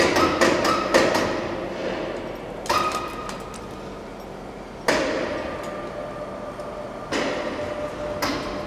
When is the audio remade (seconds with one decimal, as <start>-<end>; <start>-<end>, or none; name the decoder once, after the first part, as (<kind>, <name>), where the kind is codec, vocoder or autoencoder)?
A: none